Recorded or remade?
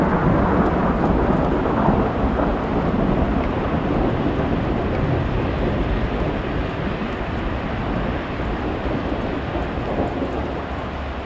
recorded